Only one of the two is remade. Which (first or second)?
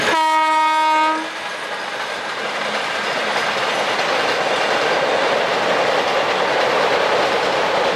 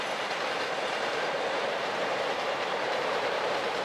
second